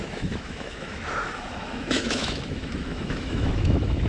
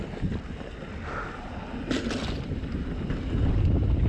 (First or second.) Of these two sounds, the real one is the second